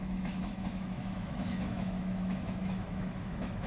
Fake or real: fake